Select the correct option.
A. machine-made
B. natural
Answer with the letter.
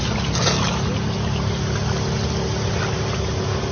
B